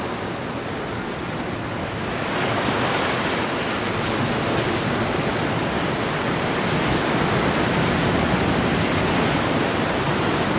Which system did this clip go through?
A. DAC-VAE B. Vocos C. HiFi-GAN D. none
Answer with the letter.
D